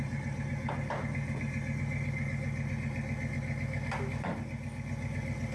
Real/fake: real